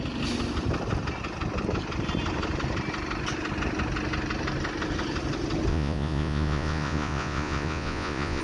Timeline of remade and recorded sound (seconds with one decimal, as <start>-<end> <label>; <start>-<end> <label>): 0.0-5.7 recorded; 5.7-8.4 remade